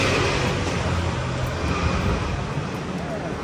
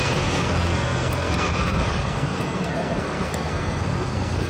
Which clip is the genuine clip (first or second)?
first